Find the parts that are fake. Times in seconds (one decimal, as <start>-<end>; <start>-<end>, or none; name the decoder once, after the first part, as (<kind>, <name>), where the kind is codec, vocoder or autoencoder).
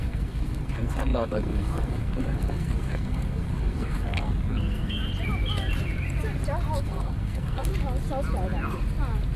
0.0-5.0 (codec, SNAC); 6.8-7.7